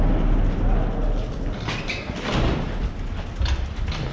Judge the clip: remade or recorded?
recorded